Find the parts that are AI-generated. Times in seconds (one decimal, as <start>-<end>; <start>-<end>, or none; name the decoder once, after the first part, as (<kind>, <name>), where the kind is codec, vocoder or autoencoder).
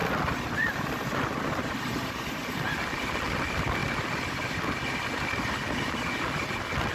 none